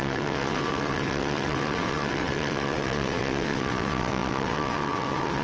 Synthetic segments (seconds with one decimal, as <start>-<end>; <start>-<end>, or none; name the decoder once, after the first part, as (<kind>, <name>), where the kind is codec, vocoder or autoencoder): 0.0-5.4 (vocoder, WaveNeXt)